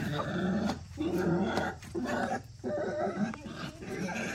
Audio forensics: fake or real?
fake